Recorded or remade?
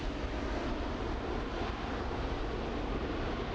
recorded